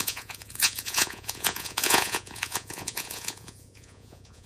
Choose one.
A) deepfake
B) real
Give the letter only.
A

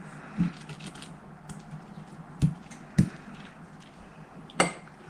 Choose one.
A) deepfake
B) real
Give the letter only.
B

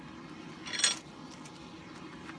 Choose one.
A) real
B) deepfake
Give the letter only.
A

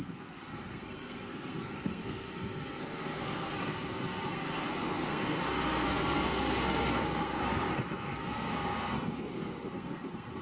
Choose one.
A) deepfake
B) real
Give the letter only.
A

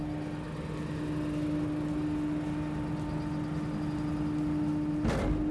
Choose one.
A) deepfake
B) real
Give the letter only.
B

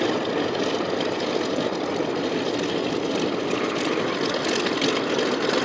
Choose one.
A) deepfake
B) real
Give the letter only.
B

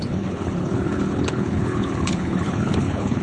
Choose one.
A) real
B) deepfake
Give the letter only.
B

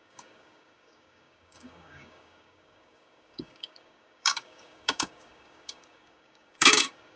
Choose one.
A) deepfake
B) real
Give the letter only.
A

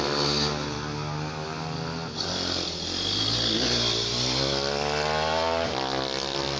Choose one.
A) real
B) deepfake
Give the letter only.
A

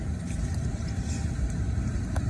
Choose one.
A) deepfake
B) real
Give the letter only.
A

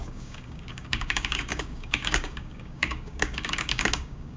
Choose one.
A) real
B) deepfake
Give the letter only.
B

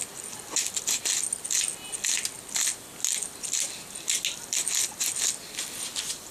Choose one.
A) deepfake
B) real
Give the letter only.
B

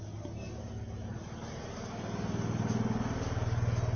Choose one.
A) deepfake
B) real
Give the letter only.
B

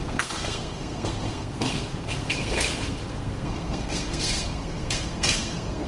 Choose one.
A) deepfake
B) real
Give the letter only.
A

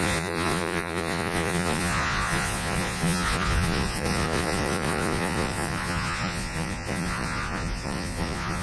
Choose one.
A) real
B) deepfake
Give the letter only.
B